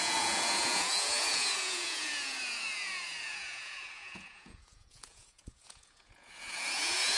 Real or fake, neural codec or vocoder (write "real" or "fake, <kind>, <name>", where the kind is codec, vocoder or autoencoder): fake, vocoder, Vocos